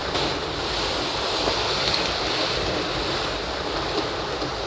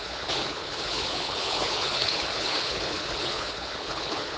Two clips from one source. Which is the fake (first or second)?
second